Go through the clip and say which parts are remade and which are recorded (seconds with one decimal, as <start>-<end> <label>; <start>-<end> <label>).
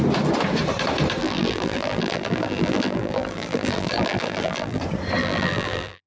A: 0.0-1.2 recorded; 1.2-4.8 remade; 4.8-5.2 recorded; 5.2-6.1 remade